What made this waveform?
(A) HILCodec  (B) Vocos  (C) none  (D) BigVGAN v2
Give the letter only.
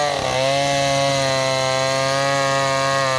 C